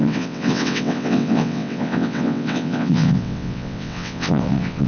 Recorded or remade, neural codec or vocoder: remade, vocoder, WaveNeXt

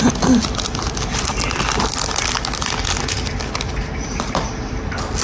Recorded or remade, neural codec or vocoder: remade, vocoder, BigVGAN v2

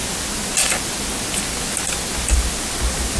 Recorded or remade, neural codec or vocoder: recorded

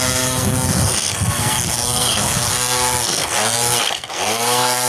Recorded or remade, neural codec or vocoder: remade, codec, SNAC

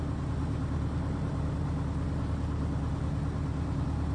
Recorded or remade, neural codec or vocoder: recorded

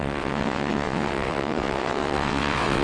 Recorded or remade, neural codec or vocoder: remade, vocoder, WaveNeXt